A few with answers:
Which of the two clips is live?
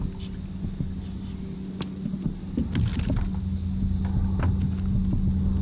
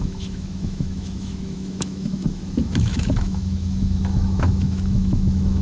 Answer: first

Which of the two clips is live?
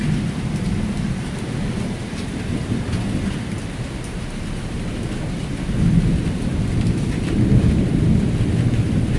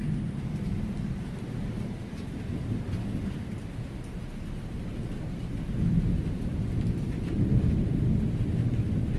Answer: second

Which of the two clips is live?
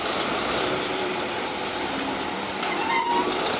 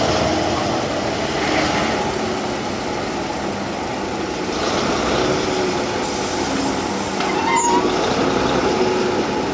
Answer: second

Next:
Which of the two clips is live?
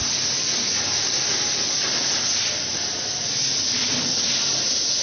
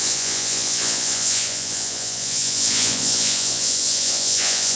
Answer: first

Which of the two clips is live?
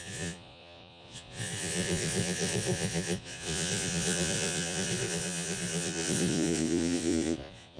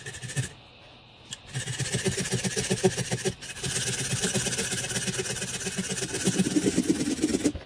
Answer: second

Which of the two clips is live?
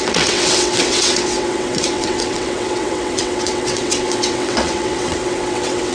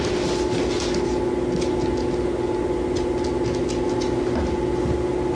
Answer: second